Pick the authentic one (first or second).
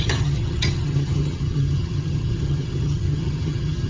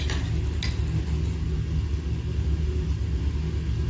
second